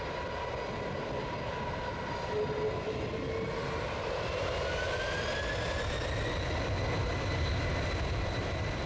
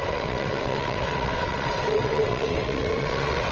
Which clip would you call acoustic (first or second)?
first